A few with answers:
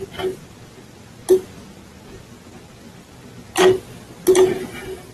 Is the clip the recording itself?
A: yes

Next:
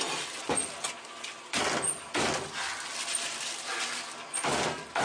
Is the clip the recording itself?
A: yes